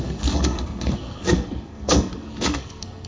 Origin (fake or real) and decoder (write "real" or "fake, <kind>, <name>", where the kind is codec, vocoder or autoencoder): fake, codec, SNAC